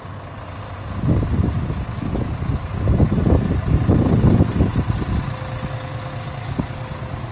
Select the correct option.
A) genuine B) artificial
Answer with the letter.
A